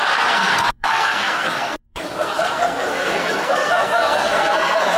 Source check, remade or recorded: remade